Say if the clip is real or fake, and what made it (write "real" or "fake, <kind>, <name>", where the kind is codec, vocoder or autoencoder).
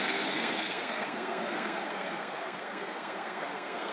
fake, codec, SNAC